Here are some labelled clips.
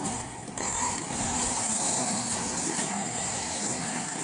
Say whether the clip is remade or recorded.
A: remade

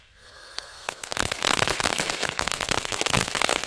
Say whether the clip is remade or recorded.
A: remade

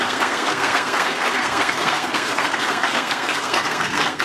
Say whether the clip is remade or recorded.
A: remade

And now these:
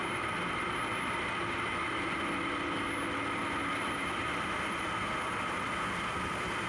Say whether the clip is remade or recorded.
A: recorded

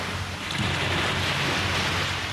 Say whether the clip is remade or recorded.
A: recorded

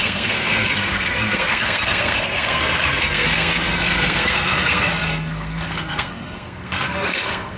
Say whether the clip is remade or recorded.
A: remade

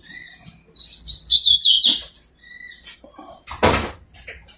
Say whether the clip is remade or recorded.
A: recorded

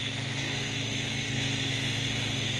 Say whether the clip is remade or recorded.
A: remade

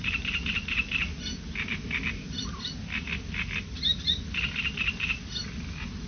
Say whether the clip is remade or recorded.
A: recorded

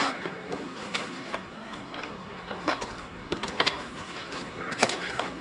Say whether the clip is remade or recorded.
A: remade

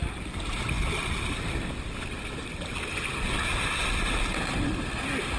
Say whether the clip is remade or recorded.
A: recorded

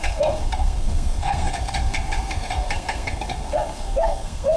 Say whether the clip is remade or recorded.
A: remade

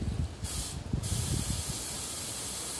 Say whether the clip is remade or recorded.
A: recorded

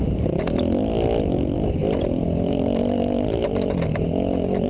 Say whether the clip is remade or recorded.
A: recorded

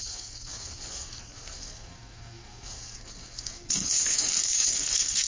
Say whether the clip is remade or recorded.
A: remade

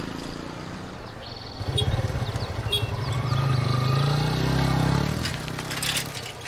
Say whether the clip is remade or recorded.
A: recorded